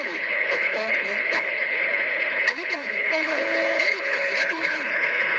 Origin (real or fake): fake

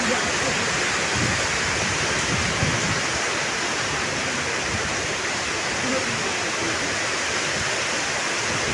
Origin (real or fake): real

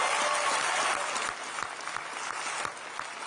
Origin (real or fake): real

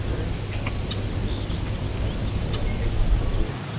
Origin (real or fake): real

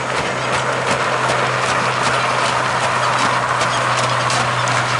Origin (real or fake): real